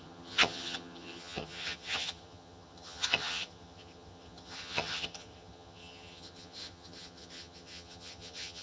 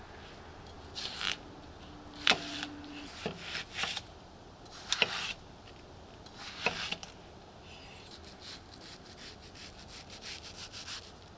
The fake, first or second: first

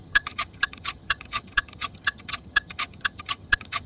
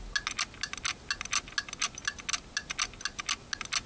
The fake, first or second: first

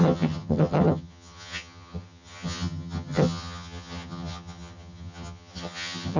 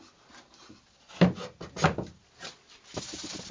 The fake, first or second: first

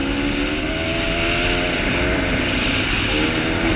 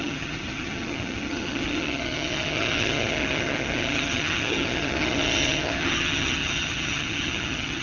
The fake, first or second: second